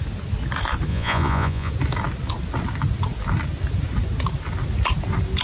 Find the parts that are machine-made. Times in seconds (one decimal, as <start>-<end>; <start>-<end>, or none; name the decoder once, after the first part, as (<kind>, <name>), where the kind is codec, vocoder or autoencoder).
0.9-1.7 (vocoder, Vocos)